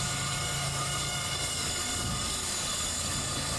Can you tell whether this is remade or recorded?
remade